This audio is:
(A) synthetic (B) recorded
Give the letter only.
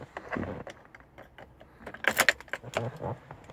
B